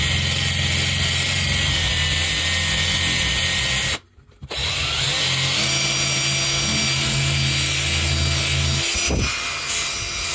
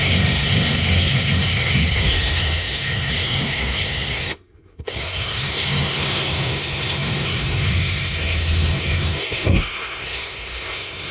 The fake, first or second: second